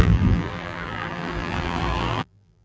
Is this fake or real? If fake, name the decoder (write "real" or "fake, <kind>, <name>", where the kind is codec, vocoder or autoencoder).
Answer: fake, vocoder, BigVGAN v2